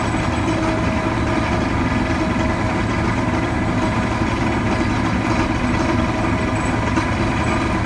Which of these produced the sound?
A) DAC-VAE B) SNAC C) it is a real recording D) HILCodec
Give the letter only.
C